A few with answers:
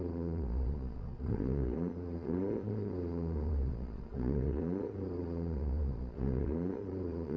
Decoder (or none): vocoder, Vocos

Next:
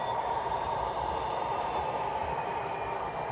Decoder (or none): none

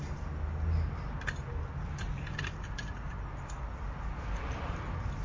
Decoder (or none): none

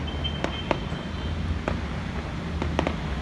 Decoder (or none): none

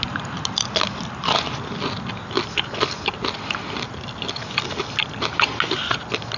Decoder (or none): none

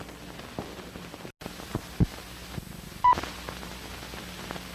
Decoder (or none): none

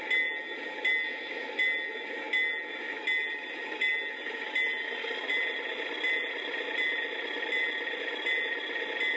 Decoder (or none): none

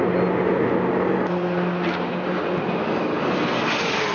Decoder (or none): none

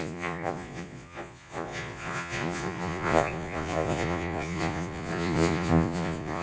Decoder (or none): vocoder, Vocos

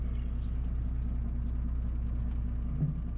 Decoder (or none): none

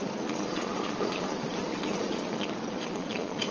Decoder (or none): vocoder, Vocos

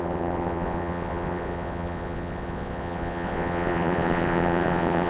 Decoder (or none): vocoder, Vocos